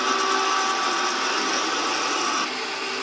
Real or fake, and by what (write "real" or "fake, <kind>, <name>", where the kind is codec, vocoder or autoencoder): real